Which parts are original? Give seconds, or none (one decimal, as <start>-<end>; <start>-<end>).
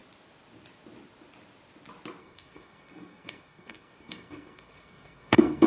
0.0-2.2